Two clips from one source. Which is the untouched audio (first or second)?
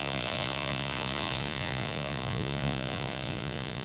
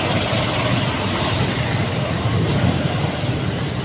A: second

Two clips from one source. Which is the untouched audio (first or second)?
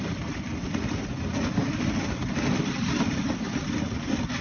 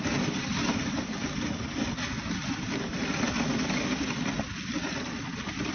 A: second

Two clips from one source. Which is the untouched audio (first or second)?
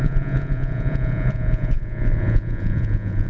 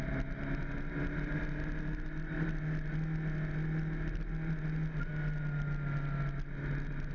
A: second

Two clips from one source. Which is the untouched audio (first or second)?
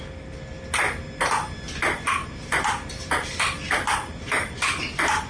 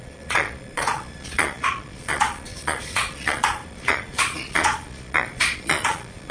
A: first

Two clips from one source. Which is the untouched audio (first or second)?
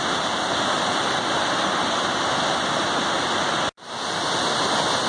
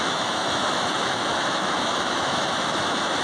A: first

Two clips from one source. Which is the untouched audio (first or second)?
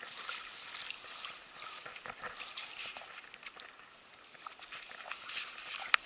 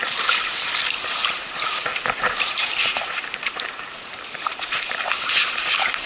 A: first